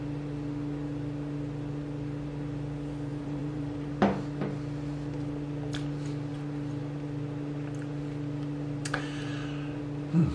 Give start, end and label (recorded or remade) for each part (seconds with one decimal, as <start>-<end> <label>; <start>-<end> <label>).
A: 0.0-3.1 recorded; 3.1-3.9 remade; 3.9-10.3 recorded